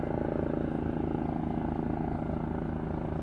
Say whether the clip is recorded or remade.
recorded